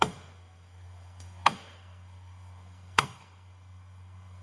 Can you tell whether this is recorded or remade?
remade